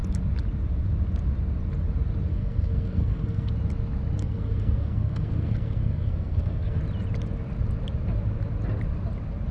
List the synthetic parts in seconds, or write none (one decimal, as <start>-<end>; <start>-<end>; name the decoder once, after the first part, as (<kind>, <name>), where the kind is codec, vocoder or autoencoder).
2.3-3.5 (codec, SNAC); 4.2-6.8